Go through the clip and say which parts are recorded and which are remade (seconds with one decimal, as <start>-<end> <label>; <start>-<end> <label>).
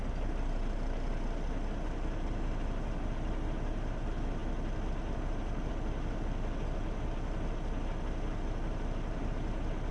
0.0-9.9 recorded